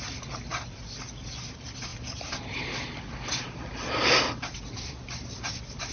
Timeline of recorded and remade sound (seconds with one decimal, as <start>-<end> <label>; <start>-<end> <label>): 0.0-5.9 recorded